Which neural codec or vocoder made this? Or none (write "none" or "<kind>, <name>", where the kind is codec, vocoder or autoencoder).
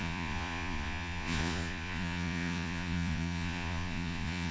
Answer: vocoder, Vocos